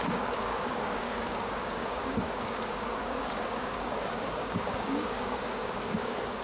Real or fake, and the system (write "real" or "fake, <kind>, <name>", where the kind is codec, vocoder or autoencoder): fake, codec, DAC